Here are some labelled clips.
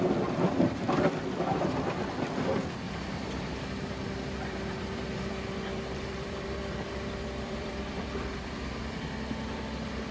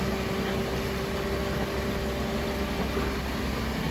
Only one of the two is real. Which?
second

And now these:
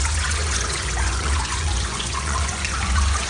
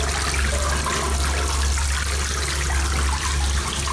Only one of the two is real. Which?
second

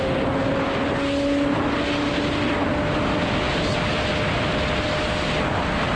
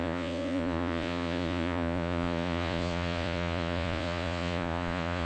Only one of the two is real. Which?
first